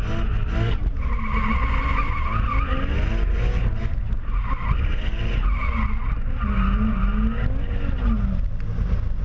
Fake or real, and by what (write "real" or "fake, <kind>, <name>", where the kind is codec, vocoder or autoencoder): real